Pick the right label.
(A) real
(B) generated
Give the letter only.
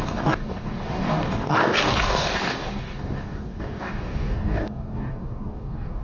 B